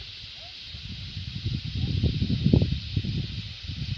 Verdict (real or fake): real